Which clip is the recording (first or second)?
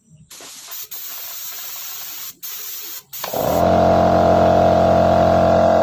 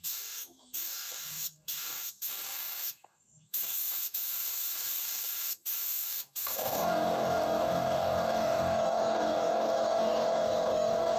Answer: first